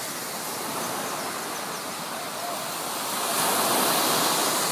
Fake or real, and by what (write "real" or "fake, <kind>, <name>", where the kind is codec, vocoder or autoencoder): real